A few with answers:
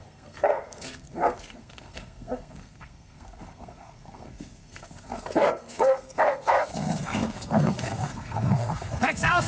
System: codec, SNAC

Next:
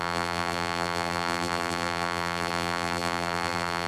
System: vocoder, BigVGAN v2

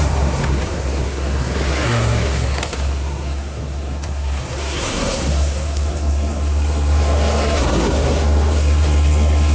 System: codec, SNAC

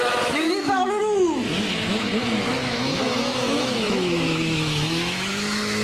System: autoencoder, DAC-VAE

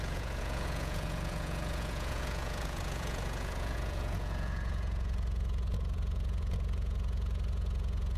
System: vocoder, Vocos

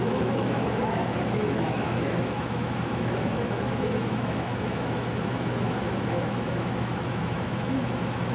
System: autoencoder, DAC-VAE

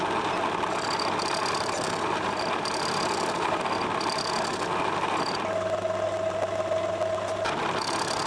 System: none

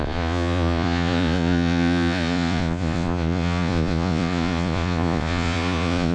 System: vocoder, Vocos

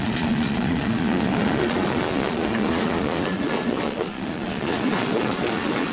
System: vocoder, Vocos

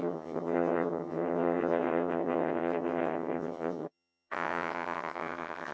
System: vocoder, HiFi-GAN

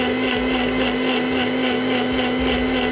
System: none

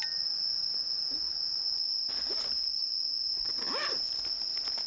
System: none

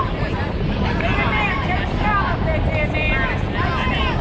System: none